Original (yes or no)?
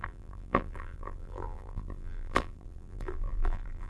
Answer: no